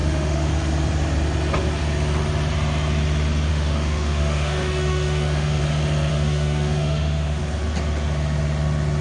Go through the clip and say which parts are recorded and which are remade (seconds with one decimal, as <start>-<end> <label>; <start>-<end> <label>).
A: 0.0-0.5 remade; 0.5-3.5 recorded; 3.5-5.6 remade; 5.6-6.1 recorded; 6.1-7.4 remade; 7.4-9.0 recorded